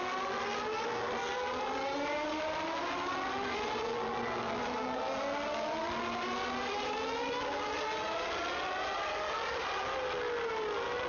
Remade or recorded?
recorded